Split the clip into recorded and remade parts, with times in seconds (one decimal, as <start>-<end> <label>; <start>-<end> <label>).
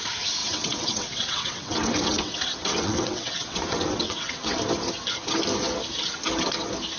0.0-0.4 recorded; 0.4-4.6 remade; 4.6-7.0 recorded